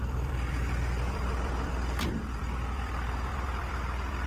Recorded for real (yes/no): no